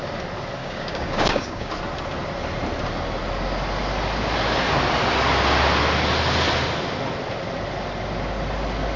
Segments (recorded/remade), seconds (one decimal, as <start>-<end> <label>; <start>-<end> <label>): 0.0-0.6 recorded; 0.6-1.7 remade; 1.7-9.0 recorded